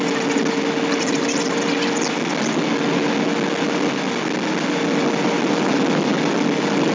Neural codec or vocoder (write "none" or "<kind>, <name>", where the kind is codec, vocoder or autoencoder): none